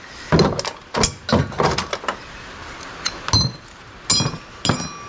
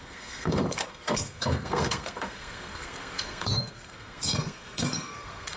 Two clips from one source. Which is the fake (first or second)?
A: second